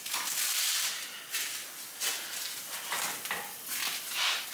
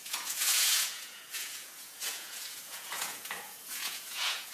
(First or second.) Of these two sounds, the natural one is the first